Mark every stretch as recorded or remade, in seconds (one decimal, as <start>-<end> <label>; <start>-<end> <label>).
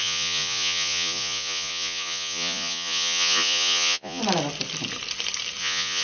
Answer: 0.0-4.2 remade; 4.2-5.6 recorded; 5.6-6.0 remade